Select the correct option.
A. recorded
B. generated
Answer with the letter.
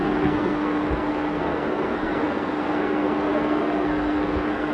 B